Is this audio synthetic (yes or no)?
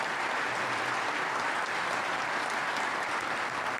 no